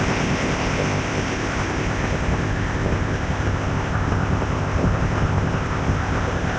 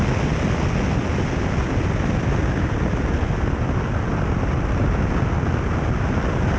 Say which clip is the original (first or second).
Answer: second